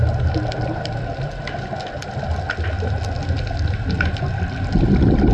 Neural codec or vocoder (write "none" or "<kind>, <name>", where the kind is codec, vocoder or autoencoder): none